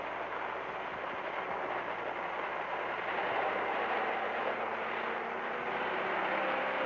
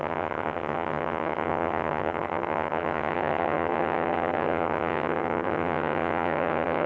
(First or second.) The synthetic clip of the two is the second